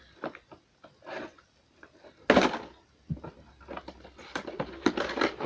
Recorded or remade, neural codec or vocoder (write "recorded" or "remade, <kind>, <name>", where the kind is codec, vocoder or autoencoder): recorded